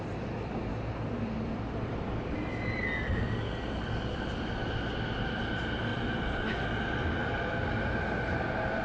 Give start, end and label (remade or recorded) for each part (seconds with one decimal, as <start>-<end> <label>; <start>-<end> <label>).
0.0-0.7 recorded; 0.7-4.8 remade; 4.8-7.2 recorded; 7.2-7.9 remade; 7.9-8.8 recorded